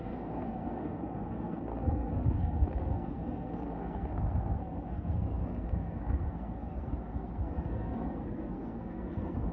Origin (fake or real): fake